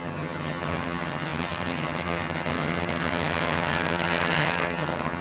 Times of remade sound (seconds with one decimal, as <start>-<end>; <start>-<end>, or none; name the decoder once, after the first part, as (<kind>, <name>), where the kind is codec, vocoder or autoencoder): 0.0-5.2 (vocoder, HiFi-GAN)